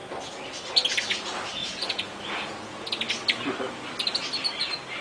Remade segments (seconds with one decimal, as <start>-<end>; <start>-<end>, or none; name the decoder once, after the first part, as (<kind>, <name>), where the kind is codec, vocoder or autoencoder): 1.6-2.9 (vocoder, Vocos)